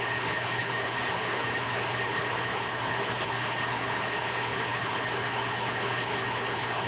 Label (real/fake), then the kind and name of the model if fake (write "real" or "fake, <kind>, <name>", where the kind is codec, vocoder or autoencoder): fake, codec, HILCodec